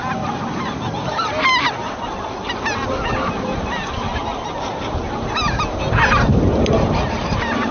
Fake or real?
real